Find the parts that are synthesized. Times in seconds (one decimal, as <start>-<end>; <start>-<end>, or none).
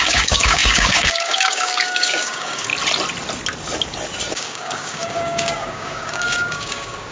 0.0-2.7; 4.3-7.1